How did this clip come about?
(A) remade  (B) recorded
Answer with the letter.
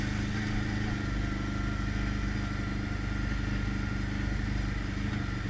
B